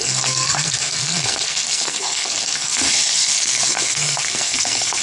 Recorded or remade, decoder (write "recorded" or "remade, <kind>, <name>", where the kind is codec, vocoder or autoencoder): remade, codec, SNAC